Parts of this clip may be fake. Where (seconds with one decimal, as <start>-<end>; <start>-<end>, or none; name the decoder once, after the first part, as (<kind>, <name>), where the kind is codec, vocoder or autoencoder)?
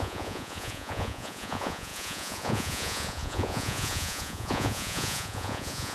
0.0-5.9 (vocoder, Vocos)